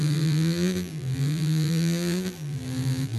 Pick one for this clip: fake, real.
fake